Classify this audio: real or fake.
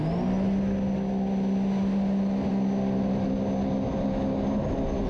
real